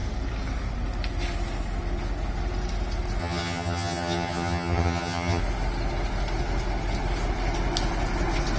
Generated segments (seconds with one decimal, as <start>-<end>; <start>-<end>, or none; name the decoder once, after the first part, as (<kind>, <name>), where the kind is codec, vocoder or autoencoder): 3.2-5.4 (vocoder, HiFi-GAN)